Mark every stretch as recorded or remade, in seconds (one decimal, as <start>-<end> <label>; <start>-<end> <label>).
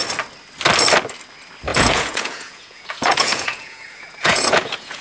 0.0-1.7 recorded; 1.7-5.0 remade